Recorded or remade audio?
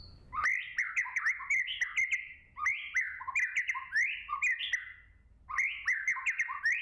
recorded